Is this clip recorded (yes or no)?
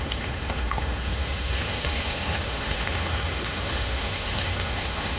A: no